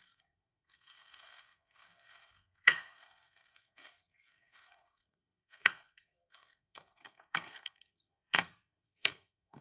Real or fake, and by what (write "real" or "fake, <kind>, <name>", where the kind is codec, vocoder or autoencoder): fake, codec, SNAC